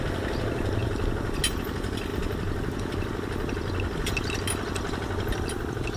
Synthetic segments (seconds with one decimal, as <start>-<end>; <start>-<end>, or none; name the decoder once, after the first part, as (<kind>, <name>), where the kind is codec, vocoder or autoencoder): none